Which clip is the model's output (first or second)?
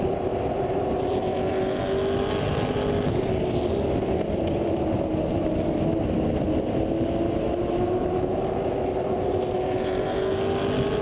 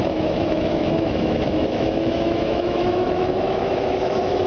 second